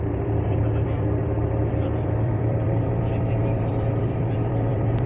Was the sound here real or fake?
fake